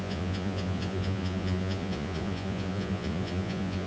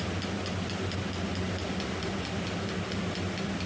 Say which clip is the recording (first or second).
second